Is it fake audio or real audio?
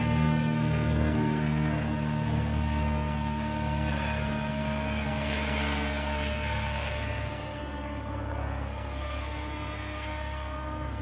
fake